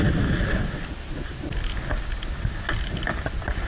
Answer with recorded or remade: recorded